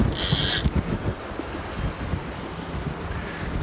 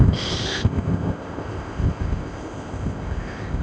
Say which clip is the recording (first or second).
first